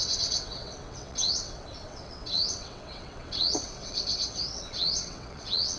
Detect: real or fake fake